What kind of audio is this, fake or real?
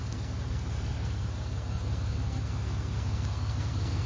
fake